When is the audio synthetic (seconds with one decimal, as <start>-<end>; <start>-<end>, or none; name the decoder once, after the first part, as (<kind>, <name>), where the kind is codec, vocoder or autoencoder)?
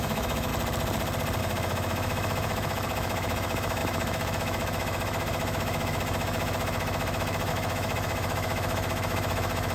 0.0-0.5 (autoencoder, DAC-VAE); 1.4-9.7